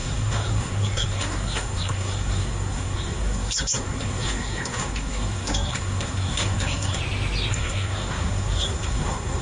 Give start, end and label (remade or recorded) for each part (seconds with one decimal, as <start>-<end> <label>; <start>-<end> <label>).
0.0-7.0 remade; 7.0-7.5 recorded; 7.5-9.4 remade